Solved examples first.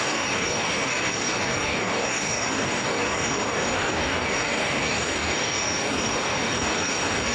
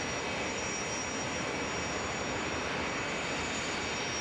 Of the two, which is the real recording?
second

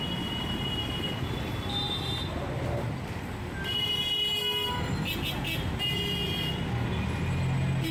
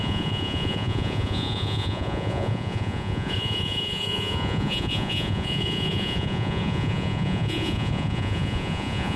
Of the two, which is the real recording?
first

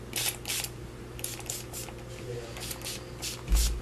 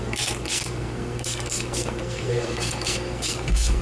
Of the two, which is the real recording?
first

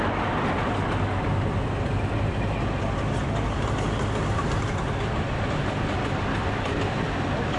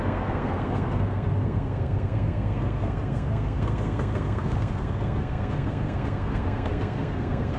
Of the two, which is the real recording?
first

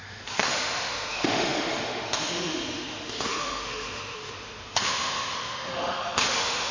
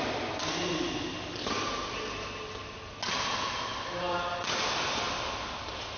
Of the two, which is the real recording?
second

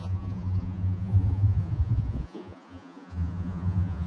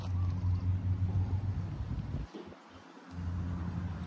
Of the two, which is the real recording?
second